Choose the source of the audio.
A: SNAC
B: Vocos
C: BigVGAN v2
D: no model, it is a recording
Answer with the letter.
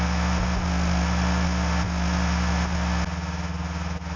D